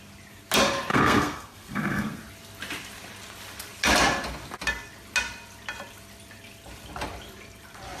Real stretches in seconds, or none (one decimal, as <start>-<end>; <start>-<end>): 0.0-0.9; 2.2-8.0